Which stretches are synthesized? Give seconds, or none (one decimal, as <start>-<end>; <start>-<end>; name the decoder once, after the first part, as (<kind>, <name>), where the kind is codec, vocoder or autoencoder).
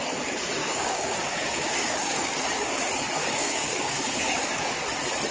0.6-2.8 (codec, DAC); 3.2-4.8